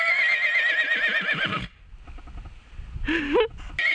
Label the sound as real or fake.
real